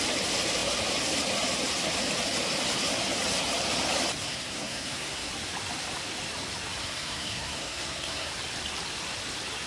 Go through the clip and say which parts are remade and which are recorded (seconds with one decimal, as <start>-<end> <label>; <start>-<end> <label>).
0.0-4.2 recorded; 4.2-5.3 remade; 5.3-6.8 recorded; 6.8-8.3 remade; 8.3-9.7 recorded